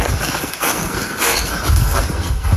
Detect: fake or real fake